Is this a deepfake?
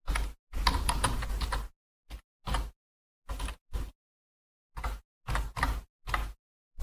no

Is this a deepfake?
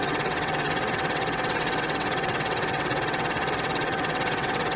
yes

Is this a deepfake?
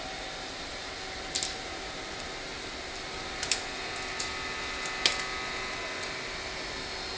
no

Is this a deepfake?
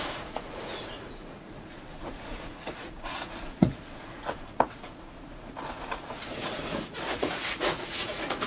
yes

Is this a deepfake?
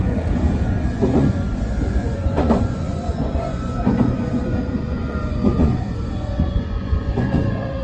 yes